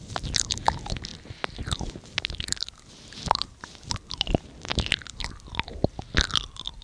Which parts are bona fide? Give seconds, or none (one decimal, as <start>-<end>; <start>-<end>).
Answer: 0.0-6.8